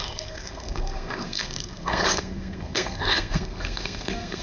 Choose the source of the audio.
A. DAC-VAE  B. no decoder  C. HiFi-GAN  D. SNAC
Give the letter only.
D